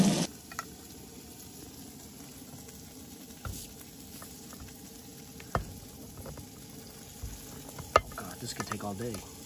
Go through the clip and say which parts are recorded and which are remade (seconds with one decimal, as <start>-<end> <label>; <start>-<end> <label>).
0.0-9.5 recorded